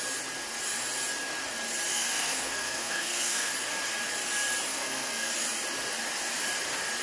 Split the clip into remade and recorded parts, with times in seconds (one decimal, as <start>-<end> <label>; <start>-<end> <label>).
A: 0.0-1.9 recorded; 1.9-3.5 remade; 3.5-4.7 recorded; 4.7-5.3 remade; 5.3-7.0 recorded